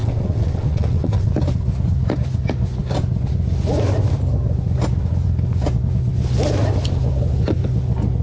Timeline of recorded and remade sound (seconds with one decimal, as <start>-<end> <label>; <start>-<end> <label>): 0.0-1.3 remade; 1.3-8.2 recorded